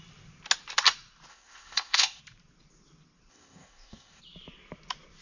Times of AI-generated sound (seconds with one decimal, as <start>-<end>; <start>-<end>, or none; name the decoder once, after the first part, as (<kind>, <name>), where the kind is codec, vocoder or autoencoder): 1.3-2.2 (codec, ZipCodec); 3.3-4.2